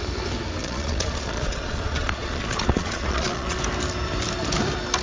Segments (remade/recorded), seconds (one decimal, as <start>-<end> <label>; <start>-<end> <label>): 0.0-0.6 recorded; 0.6-3.6 remade; 3.6-5.0 recorded